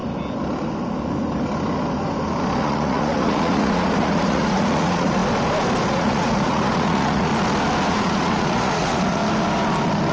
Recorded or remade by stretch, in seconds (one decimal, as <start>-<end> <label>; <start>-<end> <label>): 0.0-2.6 recorded; 2.6-5.2 remade; 5.2-5.9 recorded; 5.9-7.3 remade; 7.3-7.9 recorded; 7.9-9.2 remade; 9.2-10.1 recorded